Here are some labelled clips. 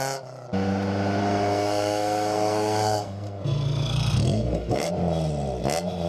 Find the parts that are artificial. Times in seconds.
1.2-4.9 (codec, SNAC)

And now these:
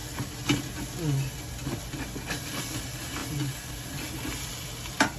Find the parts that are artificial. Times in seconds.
none

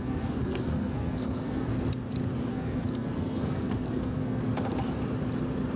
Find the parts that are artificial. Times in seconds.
0.0-1.7 (codec, SNAC); 2.5-4.4

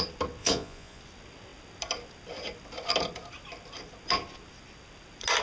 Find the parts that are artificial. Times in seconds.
0.4-1.0 (vocoder, Vocos)

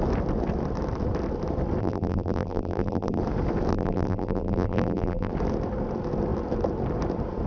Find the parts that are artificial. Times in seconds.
1.8-3.2 (vocoder, BigVGAN v2); 3.7-5.3

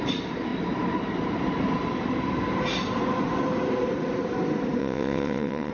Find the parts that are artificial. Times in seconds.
4.8-5.7 (vocoder, WaveNeXt)